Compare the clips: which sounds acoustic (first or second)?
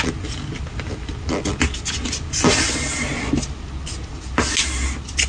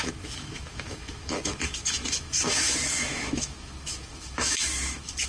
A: first